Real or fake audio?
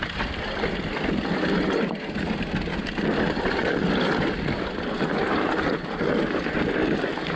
real